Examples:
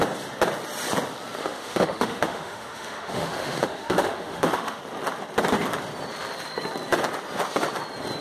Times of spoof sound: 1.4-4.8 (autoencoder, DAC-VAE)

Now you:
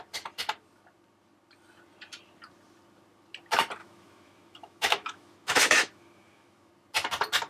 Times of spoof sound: 3.8-6.7 (autoencoder, DAC-VAE)

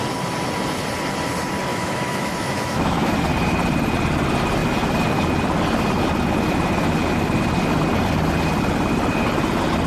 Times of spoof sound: 1.7-3.1 (autoencoder, DAC-VAE)

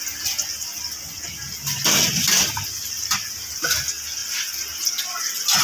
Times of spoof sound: none

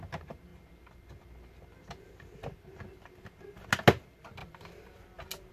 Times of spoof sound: none

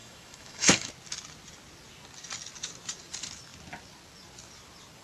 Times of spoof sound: 0.0-0.9 (autoencoder, DAC-VAE)

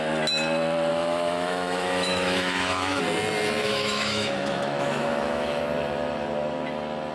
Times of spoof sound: 0.9-3.0 (autoencoder, DAC-VAE); 3.6-5.6

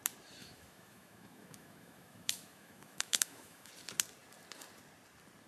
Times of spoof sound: 0.4-3.7 (autoencoder, DAC-VAE)